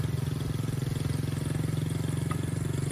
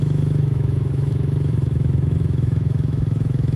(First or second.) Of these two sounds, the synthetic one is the second